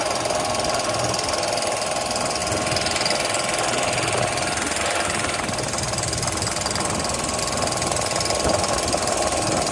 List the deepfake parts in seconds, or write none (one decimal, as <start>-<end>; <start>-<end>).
none